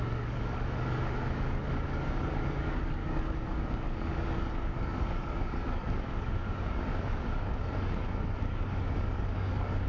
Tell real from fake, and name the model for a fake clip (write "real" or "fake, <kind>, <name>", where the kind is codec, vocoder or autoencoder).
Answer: fake, codec, DAC